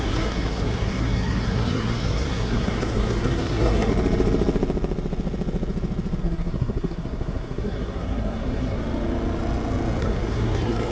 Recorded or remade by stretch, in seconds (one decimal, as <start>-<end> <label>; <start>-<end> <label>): 0.0-3.9 remade; 3.9-6.2 recorded; 6.2-8.8 remade; 8.8-10.0 recorded; 10.0-10.9 remade